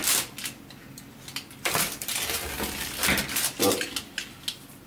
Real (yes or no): yes